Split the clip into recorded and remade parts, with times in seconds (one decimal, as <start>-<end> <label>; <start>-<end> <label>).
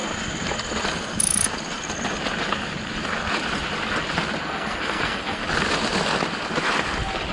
0.0-4.4 recorded; 4.4-5.4 remade; 5.4-7.3 recorded